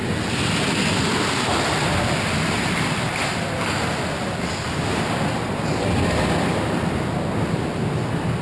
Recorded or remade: recorded